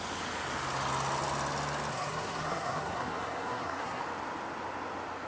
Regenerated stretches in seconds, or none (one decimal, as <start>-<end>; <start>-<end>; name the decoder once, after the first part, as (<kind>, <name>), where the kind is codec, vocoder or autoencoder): 1.9-4.0 (codec, SNAC)